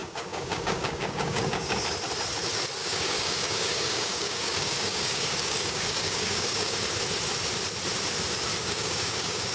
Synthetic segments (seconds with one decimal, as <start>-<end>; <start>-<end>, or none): 0.0-1.8; 2.8-6.8; 8.6-9.5